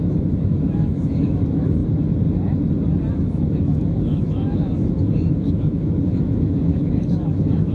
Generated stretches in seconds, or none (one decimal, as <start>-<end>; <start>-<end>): 0.0-1.8; 3.1-7.7